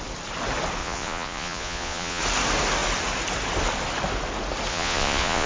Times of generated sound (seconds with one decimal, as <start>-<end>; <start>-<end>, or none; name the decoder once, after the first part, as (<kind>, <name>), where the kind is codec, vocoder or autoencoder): 0.8-2.2 (vocoder, Vocos); 4.7-5.5